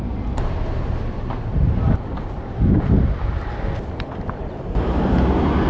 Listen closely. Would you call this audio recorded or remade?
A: recorded